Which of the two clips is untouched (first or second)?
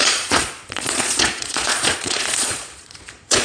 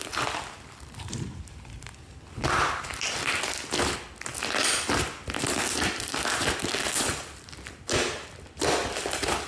second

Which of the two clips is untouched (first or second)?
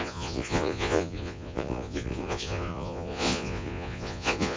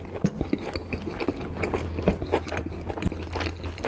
second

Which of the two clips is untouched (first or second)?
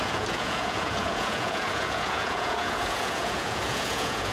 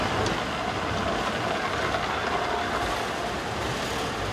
second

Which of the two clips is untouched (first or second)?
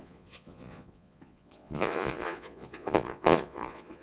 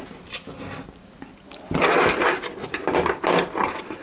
second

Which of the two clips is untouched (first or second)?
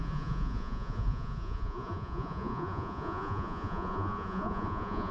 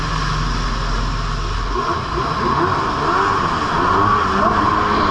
second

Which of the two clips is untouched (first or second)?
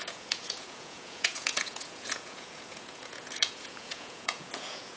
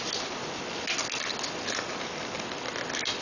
second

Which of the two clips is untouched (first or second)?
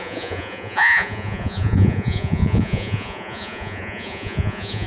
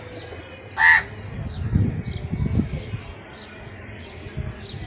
second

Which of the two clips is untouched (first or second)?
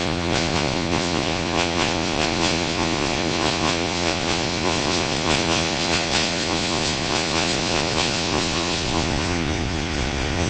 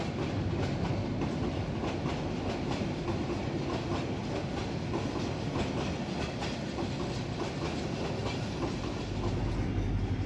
second